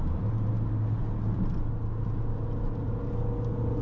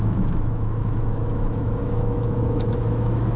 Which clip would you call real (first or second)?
first